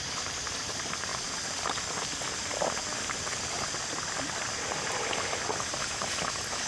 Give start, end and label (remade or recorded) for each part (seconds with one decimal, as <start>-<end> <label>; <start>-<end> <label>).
0.0-1.1 recorded; 1.1-5.1 remade; 5.1-6.7 recorded